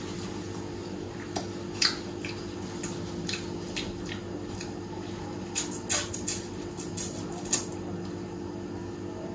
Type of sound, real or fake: real